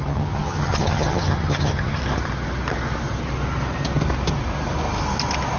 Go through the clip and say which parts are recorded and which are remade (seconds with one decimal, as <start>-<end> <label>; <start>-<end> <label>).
0.0-2.0 remade; 2.0-5.6 recorded